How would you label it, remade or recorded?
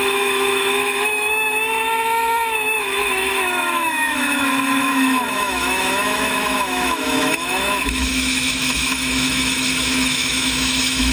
remade